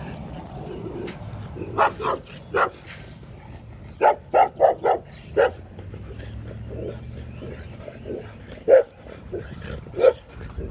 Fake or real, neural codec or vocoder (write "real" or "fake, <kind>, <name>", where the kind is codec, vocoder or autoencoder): real